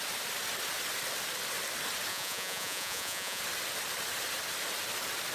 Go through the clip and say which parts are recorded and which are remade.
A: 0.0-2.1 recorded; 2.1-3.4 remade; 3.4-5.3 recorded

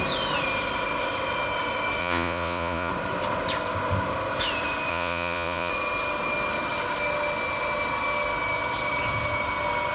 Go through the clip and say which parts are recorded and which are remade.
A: 0.0-2.0 recorded; 2.0-2.9 remade; 2.9-4.9 recorded; 4.9-5.7 remade; 5.7-9.9 recorded

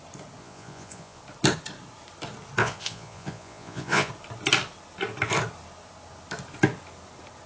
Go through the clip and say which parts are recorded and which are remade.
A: 0.0-0.4 recorded; 0.4-1.2 remade; 1.2-2.6 recorded; 2.6-4.1 remade; 4.1-7.5 recorded

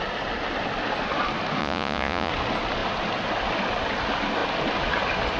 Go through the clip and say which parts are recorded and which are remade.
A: 0.0-1.6 recorded; 1.6-2.3 remade; 2.3-5.4 recorded

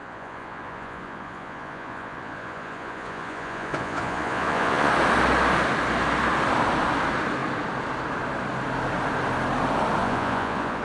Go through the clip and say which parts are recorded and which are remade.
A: 0.0-4.9 remade; 4.9-10.0 recorded; 10.0-10.8 remade